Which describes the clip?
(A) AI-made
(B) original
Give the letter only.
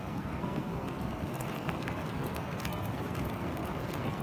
A